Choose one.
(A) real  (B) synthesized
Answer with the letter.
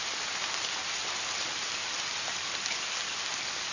A